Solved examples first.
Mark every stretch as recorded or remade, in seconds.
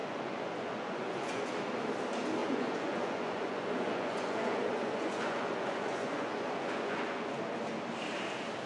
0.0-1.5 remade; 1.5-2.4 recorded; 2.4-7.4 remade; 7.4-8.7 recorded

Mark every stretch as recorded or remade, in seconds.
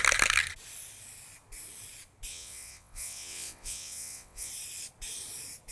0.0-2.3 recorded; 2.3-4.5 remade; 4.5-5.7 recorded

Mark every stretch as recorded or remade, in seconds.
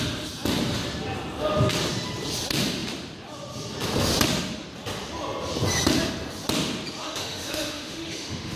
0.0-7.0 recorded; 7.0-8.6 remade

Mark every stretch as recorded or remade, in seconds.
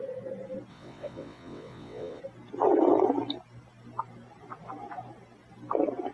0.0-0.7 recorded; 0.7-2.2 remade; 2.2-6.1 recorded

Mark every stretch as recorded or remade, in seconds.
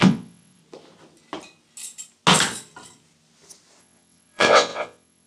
0.0-0.6 remade; 0.6-3.8 recorded; 3.8-5.3 remade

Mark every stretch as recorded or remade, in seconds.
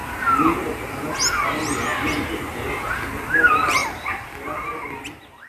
0.0-5.5 recorded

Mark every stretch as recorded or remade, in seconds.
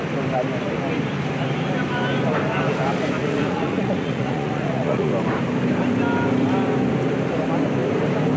0.0-3.2 recorded; 3.2-5.1 remade; 5.1-8.4 recorded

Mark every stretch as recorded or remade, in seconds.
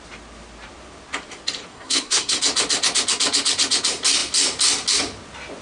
0.0-1.7 recorded; 1.7-2.4 remade; 2.4-5.6 recorded